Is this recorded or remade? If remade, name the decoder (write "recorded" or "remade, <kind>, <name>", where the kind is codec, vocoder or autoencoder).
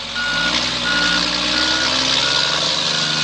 recorded